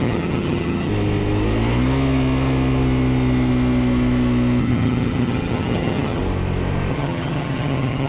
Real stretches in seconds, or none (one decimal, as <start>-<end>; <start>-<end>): 0.9-4.6; 6.2-6.9